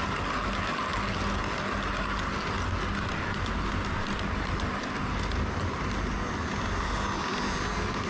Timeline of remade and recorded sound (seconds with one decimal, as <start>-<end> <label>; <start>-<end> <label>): 0.0-8.1 recorded